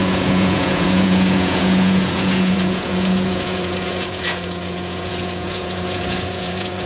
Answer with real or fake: fake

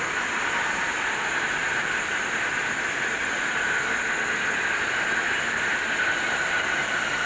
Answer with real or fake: real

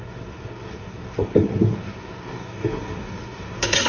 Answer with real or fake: fake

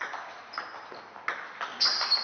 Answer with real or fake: real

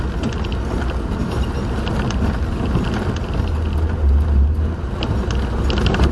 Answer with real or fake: real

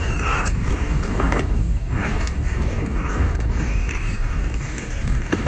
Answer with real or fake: fake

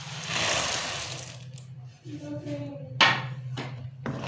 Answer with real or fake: real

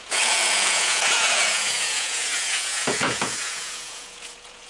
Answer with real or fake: fake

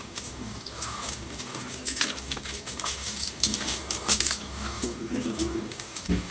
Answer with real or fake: fake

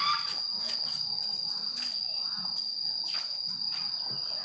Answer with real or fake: real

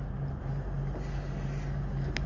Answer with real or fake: real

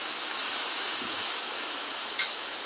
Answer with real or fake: fake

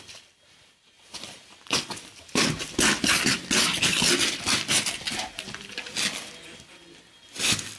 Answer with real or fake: real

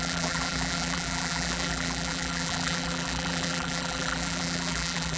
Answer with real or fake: fake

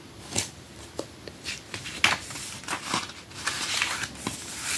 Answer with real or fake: fake